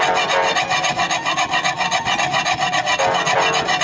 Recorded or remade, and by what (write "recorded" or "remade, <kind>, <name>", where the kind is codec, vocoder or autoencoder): recorded